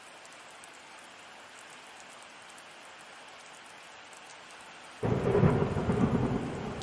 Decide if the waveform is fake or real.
real